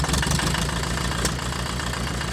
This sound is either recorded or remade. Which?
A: recorded